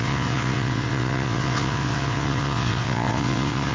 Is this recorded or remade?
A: remade